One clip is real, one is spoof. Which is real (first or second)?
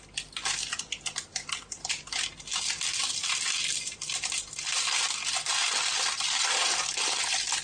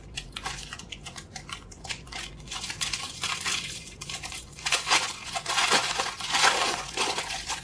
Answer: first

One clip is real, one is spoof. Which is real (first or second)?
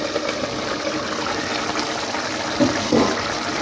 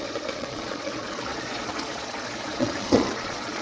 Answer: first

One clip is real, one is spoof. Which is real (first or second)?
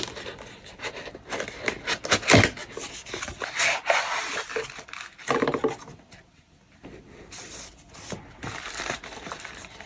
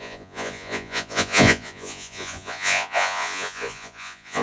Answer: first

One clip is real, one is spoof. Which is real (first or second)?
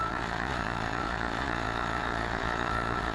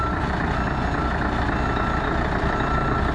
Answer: second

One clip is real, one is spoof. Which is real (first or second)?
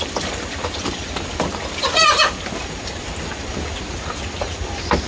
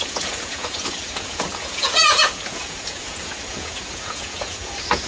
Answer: first